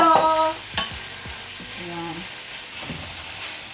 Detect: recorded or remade remade